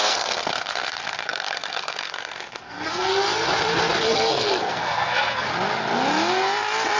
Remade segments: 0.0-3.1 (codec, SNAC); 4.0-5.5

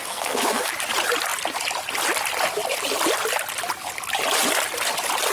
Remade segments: 0.0-0.7 (codec, SNAC)